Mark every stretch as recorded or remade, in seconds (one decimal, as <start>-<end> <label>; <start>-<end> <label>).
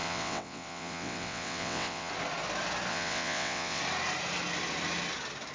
0.0-2.1 remade; 2.1-2.9 recorded; 2.9-3.8 remade; 3.8-5.5 recorded